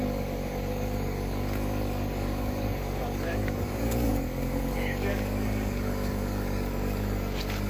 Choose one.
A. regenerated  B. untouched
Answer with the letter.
A